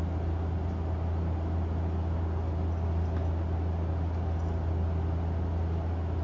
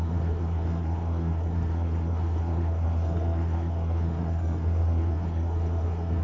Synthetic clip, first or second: second